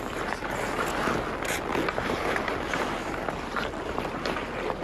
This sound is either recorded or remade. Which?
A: recorded